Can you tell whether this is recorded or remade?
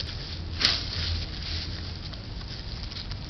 recorded